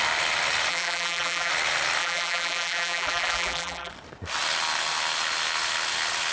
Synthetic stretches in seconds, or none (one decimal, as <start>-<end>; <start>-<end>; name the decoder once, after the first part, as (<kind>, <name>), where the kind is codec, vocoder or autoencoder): 0.7-1.5 (vocoder, BigVGAN v2); 2.0-3.9